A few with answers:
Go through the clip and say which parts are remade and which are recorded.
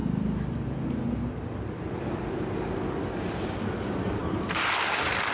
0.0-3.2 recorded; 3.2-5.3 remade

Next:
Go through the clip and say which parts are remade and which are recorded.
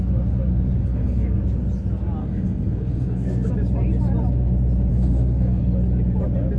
0.0-0.8 recorded; 0.8-1.4 remade; 1.4-2.2 recorded; 2.2-3.5 remade; 3.5-4.9 recorded; 4.9-5.6 remade; 5.6-6.6 recorded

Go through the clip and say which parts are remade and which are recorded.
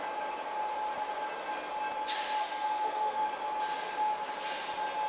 0.0-2.4 recorded; 2.4-3.2 remade; 3.2-5.1 recorded